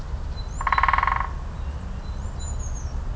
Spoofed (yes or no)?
no